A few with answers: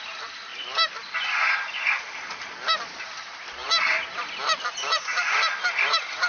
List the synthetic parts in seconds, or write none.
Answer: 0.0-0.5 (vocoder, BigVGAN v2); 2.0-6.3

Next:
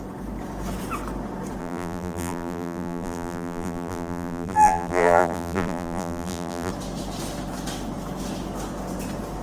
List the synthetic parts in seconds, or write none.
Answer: 1.6-6.7 (vocoder, BigVGAN v2)

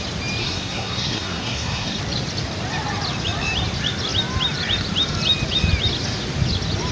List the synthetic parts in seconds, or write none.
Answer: 0.4-2.0 (codec, SNAC)

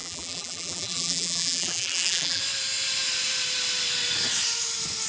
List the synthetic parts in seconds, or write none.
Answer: 0.0-2.4 (vocoder, BigVGAN v2)

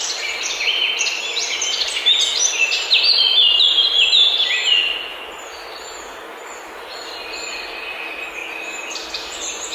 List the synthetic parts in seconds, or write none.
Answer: 2.6-3.4 (vocoder, BigVGAN v2)

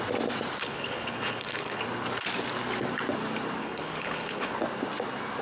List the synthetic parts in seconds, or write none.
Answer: 0.6-1.8 (codec, HILCodec); 3.6-4.5

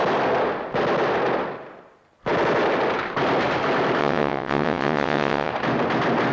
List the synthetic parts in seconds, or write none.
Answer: 4.0-5.5 (vocoder, WaveNeXt)

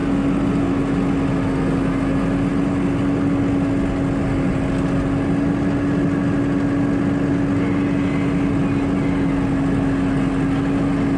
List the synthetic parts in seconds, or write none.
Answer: none